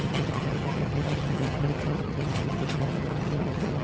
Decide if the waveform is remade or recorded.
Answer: remade